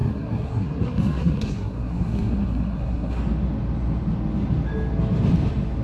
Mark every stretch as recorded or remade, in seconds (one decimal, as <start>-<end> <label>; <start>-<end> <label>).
0.0-3.2 remade; 3.2-5.8 recorded